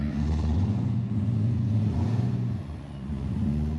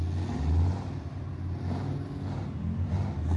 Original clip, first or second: second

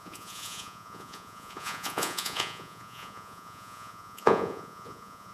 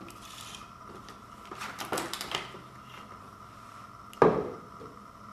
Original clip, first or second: second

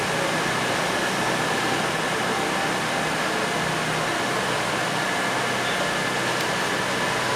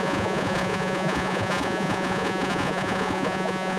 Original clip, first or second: first